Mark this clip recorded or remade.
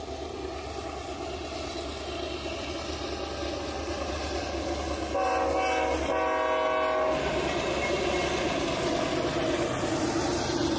recorded